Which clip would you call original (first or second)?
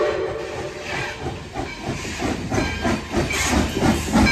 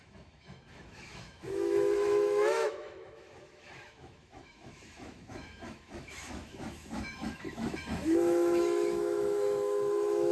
first